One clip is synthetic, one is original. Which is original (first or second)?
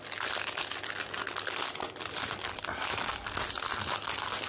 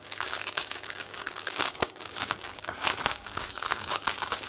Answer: first